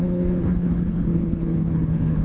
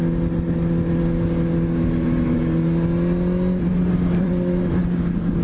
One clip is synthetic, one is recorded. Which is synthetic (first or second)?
first